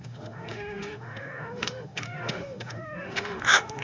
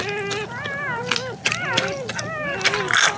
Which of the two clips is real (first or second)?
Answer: second